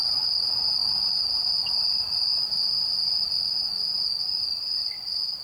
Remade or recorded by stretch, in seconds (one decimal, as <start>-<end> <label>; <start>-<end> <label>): 0.0-5.4 recorded